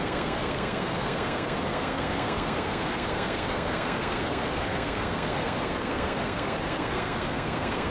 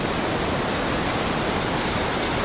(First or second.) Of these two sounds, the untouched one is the second